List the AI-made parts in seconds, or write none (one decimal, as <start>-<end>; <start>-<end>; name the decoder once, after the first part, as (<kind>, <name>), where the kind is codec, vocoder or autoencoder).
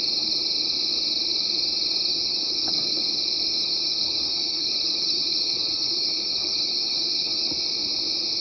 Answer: 2.1-3.0 (codec, HILCodec); 3.5-7.5